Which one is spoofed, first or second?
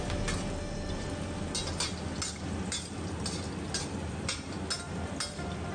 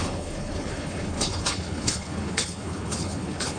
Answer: second